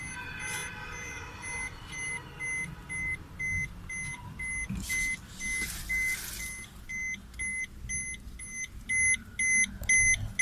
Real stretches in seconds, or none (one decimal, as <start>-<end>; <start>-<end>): 0.0-10.4